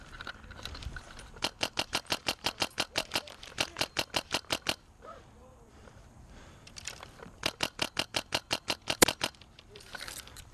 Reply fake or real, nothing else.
fake